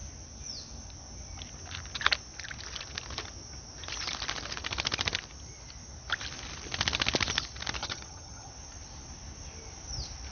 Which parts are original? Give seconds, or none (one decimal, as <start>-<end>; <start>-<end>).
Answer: 0.0-7.8; 8.5-10.3